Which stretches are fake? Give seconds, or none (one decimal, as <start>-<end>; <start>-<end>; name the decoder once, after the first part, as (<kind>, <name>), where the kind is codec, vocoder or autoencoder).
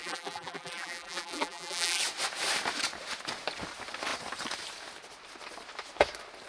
0.0-2.0 (vocoder, BigVGAN v2)